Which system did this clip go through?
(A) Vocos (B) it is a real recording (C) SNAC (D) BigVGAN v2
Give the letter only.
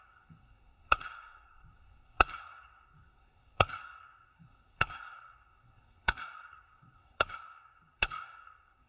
C